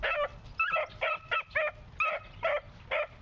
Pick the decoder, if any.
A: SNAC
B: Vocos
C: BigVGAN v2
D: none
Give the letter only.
D